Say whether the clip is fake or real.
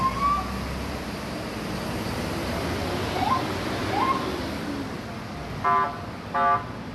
real